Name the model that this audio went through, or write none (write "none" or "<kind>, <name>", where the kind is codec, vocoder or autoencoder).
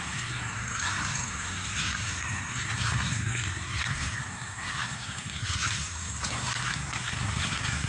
codec, SNAC